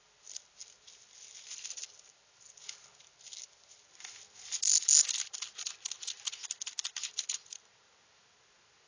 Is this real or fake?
real